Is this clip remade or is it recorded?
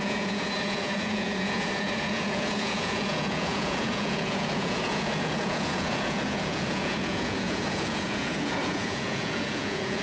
remade